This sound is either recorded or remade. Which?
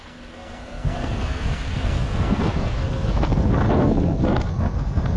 remade